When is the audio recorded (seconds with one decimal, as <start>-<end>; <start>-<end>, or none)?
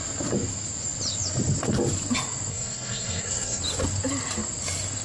0.0-2.5; 3.6-5.0